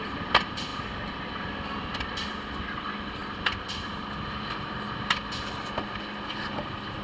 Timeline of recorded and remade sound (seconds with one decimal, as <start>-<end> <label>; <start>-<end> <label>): 0.0-7.0 recorded